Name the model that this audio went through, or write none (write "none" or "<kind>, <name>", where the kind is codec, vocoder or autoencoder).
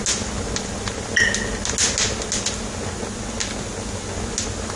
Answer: none